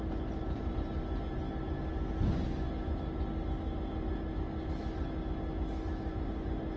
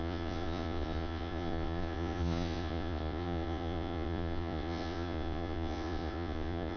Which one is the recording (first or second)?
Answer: first